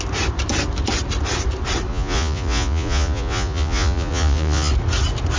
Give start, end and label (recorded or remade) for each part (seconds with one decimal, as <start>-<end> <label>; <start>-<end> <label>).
0.0-1.9 recorded; 1.9-4.7 remade; 4.7-5.4 recorded